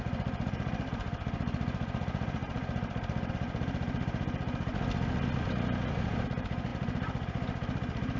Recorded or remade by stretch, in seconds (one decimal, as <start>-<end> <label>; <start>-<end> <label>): 0.0-4.7 remade; 4.7-5.5 recorded; 5.5-8.2 remade